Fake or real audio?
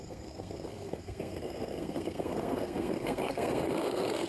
fake